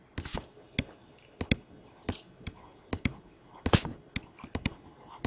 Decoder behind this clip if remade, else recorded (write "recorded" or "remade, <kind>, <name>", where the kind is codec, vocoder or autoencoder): recorded